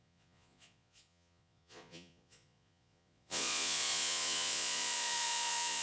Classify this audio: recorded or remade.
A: remade